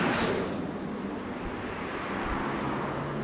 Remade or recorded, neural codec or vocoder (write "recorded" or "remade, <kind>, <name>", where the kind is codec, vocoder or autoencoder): recorded